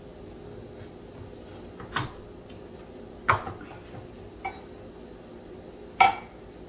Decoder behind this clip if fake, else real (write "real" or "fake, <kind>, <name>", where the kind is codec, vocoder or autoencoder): real